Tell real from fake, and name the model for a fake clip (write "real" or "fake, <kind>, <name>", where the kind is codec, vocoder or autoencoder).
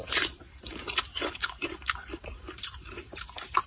fake, vocoder, BigVGAN v2